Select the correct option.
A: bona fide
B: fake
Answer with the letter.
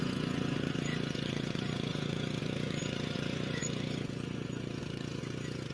B